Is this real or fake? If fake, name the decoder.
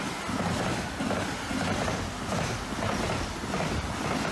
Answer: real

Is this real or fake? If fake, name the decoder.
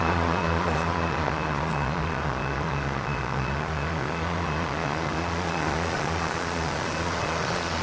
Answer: fake, vocoder, Vocos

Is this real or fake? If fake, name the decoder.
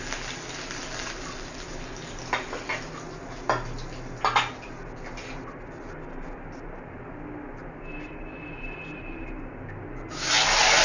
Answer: real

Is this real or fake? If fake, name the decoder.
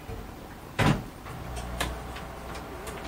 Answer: real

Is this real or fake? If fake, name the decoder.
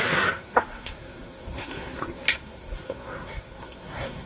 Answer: fake, codec, SNAC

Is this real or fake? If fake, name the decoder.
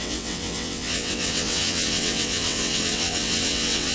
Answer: fake, vocoder, WaveNeXt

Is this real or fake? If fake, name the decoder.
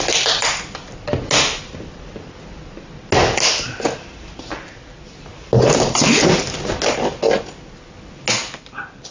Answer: real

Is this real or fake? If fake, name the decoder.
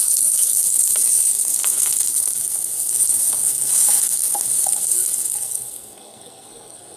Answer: fake, codec, SNAC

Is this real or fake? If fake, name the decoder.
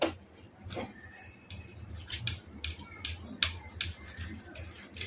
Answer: fake, vocoder, BigVGAN v2